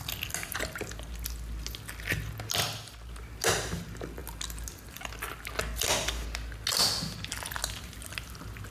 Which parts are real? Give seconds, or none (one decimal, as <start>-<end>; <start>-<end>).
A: 0.0-8.7